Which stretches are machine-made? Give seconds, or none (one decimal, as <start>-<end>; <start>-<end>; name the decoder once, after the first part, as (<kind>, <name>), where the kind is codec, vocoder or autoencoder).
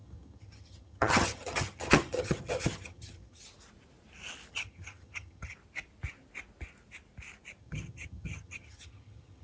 0.0-3.4 (vocoder, HiFi-GAN); 4.5-5.5; 7.6-9.4